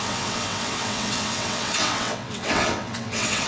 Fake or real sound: fake